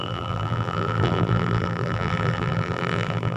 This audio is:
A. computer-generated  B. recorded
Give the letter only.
A